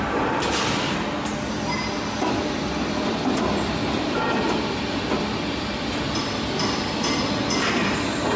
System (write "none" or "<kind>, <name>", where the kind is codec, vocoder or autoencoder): none